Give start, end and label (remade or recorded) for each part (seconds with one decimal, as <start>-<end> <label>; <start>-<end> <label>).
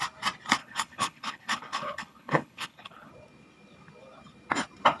0.0-0.6 recorded; 0.6-3.1 remade; 3.1-5.0 recorded